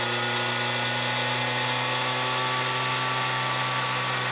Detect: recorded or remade recorded